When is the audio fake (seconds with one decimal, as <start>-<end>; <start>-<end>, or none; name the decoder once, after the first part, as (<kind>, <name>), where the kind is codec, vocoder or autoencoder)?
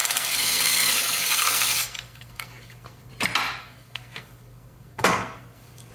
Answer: 0.0-3.1 (codec, SNAC); 3.6-5.9